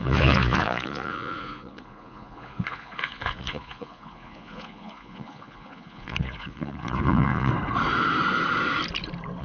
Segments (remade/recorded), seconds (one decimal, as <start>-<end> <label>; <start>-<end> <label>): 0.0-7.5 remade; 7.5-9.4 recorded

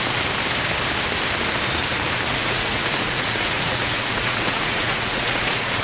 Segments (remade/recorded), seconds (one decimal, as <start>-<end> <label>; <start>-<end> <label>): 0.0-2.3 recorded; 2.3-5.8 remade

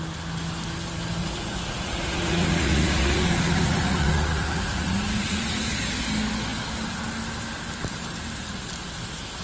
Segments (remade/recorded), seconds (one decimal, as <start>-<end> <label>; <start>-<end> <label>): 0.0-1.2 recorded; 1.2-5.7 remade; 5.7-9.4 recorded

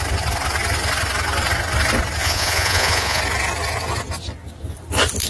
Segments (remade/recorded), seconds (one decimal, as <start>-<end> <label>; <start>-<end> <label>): 0.0-2.2 recorded; 2.2-3.2 remade; 3.2-5.3 recorded